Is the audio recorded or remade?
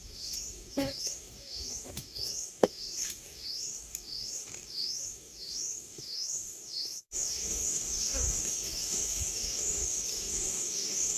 remade